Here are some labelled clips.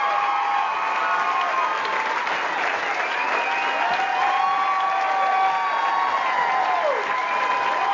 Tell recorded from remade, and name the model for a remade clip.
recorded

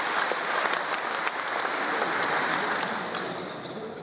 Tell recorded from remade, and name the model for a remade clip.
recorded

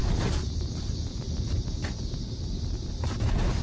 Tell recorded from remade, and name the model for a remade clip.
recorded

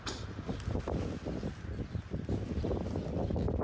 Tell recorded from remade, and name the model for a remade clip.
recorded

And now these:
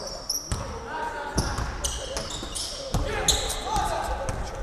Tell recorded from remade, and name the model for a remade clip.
recorded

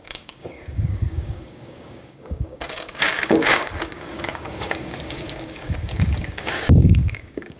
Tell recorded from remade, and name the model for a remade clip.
remade, codec, DAC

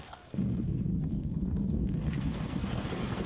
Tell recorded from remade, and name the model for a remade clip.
remade, codec, SNAC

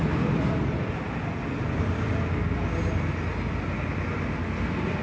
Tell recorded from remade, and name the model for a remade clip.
recorded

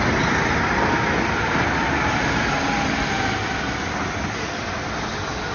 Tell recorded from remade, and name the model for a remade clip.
recorded